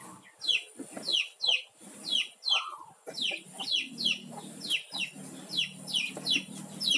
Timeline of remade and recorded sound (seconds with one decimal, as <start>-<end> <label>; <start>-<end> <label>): 0.0-7.0 recorded